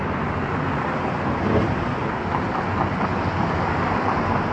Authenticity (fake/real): real